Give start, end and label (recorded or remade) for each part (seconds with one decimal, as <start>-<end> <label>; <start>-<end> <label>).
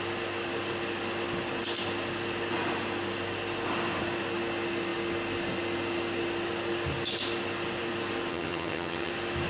0.0-8.3 recorded; 8.3-9.1 remade; 9.1-9.5 recorded